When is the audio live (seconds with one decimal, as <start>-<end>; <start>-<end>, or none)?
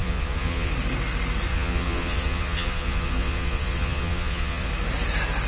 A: 0.7-1.5; 4.7-5.5